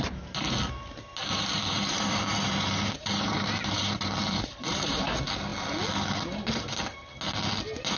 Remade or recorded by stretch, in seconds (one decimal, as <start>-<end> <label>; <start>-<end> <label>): 0.0-1.2 recorded; 1.2-5.0 remade; 5.0-8.0 recorded